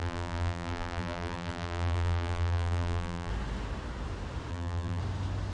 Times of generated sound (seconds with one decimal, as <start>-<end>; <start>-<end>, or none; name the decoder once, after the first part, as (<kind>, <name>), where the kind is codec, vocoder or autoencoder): 0.0-3.3 (vocoder, BigVGAN v2); 4.5-5.0